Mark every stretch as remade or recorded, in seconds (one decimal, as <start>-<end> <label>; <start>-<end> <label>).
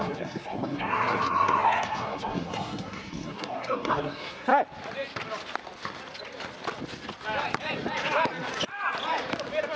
0.0-4.5 remade; 4.5-9.8 recorded